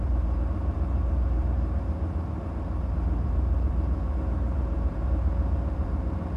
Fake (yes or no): yes